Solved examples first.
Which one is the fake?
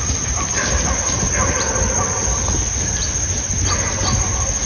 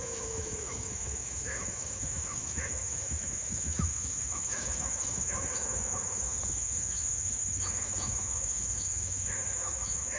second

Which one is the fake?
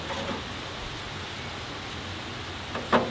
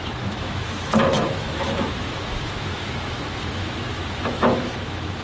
second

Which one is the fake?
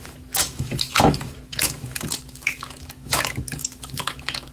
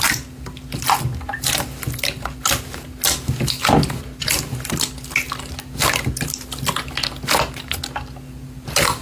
first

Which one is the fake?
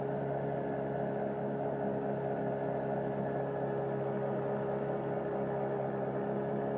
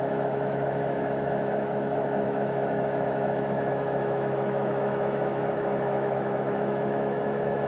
second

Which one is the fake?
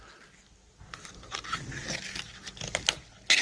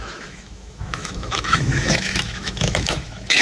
second